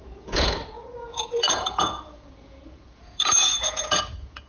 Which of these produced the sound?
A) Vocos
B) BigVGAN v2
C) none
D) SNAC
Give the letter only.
A